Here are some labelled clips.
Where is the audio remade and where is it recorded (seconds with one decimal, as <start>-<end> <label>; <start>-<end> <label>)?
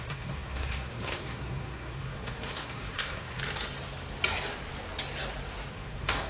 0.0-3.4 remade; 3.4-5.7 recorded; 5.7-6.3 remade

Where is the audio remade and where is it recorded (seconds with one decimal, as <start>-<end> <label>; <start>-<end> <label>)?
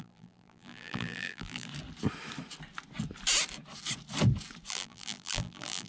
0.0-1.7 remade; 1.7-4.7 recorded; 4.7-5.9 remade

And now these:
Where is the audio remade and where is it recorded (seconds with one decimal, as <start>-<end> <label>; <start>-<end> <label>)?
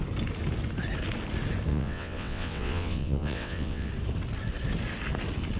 0.0-1.7 recorded; 1.7-3.9 remade; 3.9-5.6 recorded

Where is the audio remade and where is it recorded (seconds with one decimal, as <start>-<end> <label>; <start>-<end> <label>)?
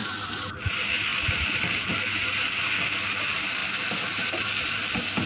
0.0-5.3 recorded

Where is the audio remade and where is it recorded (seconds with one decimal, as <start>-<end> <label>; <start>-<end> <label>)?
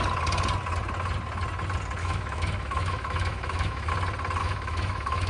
0.0-2.0 recorded; 2.0-3.9 remade; 3.9-4.4 recorded; 4.4-5.3 remade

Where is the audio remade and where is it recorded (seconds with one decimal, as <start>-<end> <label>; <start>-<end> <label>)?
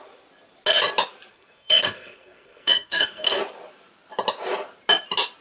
0.0-1.3 recorded; 1.3-3.4 remade; 3.4-5.4 recorded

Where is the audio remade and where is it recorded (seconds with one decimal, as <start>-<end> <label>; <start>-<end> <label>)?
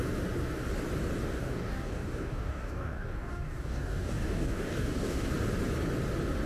0.0-1.4 recorded; 1.4-5.3 remade; 5.3-6.5 recorded